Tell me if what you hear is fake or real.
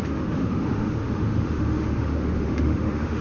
fake